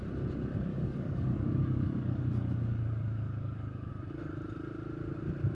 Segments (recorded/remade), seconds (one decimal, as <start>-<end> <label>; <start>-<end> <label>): 0.0-0.7 recorded; 0.7-3.9 remade; 3.9-5.5 recorded